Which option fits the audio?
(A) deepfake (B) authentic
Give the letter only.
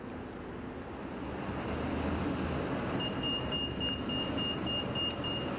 B